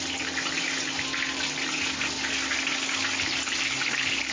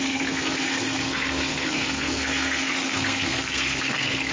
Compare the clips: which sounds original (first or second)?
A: first